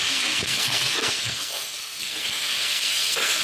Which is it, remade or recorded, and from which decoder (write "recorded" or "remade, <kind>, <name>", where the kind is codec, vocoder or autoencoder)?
remade, codec, SNAC